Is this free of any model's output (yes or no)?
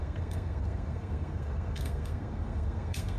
no